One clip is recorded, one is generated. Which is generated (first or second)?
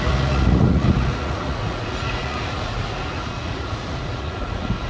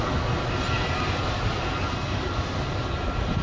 first